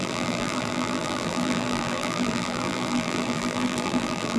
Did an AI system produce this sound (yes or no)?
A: yes